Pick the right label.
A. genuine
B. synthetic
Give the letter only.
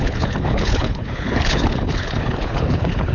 B